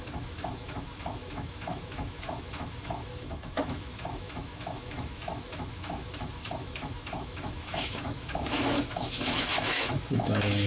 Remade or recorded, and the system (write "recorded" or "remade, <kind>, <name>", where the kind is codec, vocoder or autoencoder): remade, autoencoder, DAC-VAE